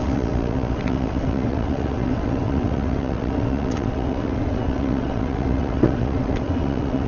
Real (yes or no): no